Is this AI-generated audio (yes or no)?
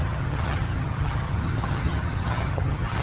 yes